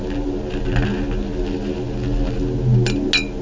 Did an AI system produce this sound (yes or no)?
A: no